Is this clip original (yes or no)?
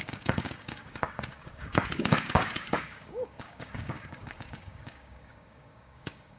no